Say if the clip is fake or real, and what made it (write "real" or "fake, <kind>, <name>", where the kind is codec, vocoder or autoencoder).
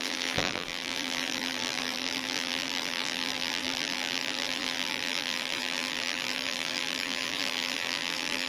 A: fake, vocoder, BigVGAN v2